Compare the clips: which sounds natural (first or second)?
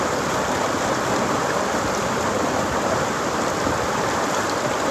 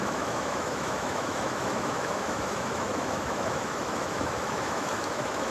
first